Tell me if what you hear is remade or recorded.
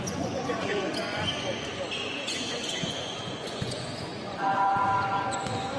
remade